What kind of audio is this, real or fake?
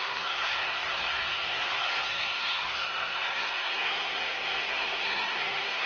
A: fake